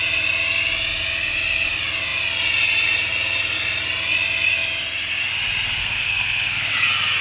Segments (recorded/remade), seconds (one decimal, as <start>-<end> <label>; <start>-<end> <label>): 0.0-5.8 recorded; 5.8-6.7 remade; 6.7-7.2 recorded